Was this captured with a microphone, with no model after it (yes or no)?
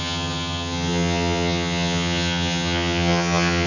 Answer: no